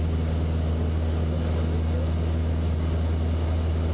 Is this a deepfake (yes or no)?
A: no